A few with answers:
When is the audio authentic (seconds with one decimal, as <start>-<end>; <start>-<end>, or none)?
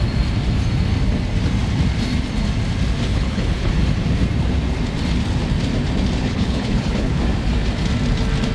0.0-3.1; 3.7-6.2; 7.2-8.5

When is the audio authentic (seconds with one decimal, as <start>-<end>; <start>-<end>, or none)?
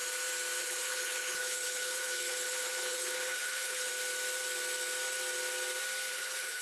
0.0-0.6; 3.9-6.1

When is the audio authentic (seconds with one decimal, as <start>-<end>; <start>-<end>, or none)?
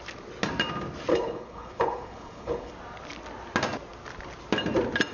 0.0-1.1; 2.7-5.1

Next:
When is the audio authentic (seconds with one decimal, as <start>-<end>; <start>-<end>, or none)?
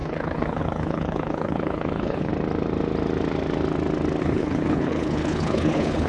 2.3-4.2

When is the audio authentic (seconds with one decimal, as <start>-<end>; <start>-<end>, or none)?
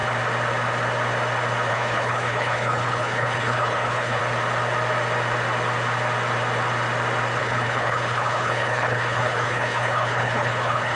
0.0-1.7; 4.2-7.4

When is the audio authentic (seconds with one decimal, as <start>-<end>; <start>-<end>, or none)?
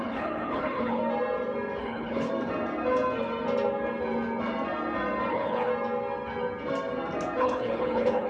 1.0-1.8; 2.3-5.3; 5.7-7.4